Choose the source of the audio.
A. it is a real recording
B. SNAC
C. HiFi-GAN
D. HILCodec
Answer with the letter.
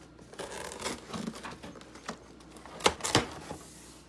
A